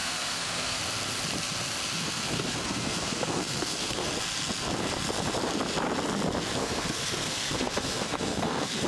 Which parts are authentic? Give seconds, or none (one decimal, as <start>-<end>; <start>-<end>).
0.8-2.0; 4.1-6.6